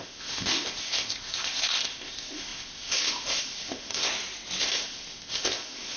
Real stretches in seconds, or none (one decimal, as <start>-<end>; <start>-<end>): 4.1-4.6